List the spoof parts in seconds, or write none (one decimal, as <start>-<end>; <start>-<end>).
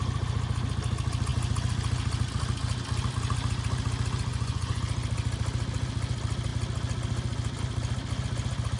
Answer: 4.3-4.8